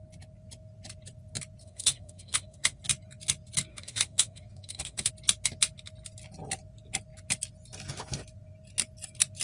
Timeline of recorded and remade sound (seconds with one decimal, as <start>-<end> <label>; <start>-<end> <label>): 0.0-1.6 recorded; 1.6-2.8 remade; 2.8-3.7 recorded; 3.7-5.1 remade; 5.1-9.4 recorded